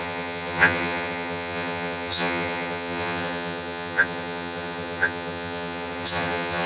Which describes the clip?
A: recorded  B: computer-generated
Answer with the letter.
B